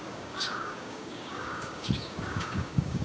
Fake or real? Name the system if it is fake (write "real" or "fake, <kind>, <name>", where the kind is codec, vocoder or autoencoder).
fake, codec, DAC